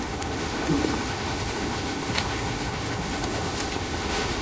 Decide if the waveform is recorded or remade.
remade